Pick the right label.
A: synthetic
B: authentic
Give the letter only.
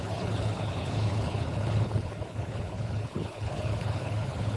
A